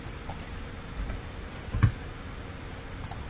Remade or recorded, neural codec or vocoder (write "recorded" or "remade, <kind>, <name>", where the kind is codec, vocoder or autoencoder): recorded